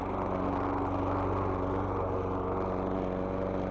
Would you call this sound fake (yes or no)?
no